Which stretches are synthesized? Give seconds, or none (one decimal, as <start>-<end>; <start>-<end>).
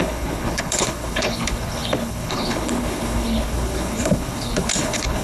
0.0-5.2